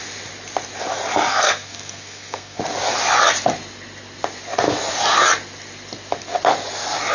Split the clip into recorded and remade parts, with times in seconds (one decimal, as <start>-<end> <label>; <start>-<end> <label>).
0.0-1.3 recorded; 1.3-2.6 remade; 2.6-7.1 recorded